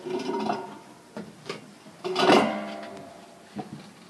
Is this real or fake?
real